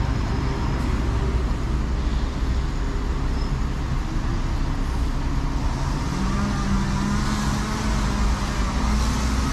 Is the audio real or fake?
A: real